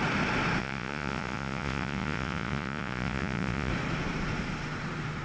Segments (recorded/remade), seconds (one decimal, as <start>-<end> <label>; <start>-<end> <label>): 0.0-0.6 recorded; 0.6-3.7 remade; 3.7-5.2 recorded